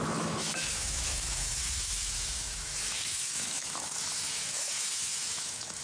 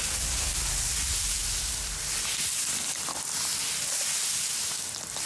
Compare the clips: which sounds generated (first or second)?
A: first